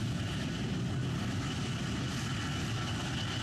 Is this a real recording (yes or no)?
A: yes